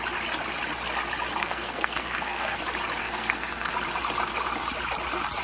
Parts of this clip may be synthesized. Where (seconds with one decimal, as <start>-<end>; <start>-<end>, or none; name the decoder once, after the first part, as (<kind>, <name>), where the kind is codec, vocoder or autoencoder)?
1.4-2.6 (codec, SNAC); 3.0-3.7